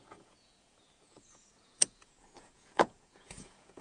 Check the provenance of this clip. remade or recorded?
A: remade